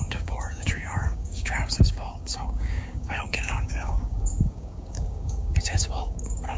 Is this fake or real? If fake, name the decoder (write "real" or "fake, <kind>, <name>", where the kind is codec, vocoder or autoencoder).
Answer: fake, codec, DAC